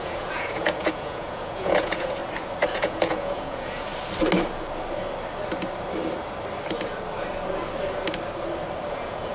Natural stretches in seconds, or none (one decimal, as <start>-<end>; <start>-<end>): 2.2-2.7; 3.9-8.9